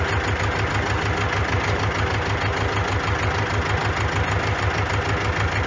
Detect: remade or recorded recorded